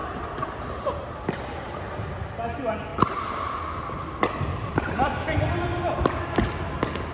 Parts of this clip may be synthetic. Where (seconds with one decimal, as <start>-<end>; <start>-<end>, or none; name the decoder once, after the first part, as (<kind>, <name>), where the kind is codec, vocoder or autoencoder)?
0.0-1.9 (vocoder, BigVGAN v2); 2.9-5.5